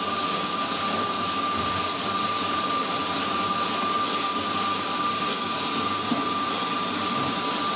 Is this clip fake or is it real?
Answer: real